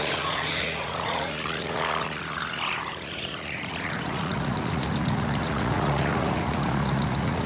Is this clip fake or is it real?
fake